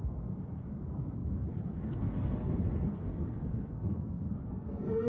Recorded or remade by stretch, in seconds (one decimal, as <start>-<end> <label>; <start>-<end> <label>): 0.0-5.1 remade